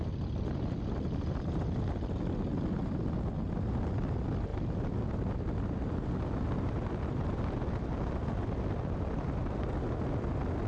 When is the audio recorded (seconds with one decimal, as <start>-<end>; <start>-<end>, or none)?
0.0-10.7